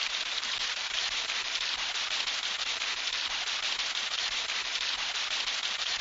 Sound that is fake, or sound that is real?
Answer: fake